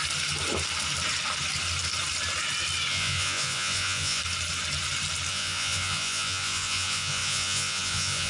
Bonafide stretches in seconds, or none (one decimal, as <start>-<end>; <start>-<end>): 0.0-2.9; 4.2-5.3